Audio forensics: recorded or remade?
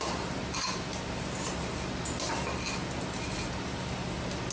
recorded